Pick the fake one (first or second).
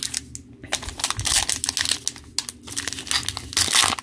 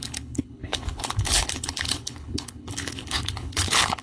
second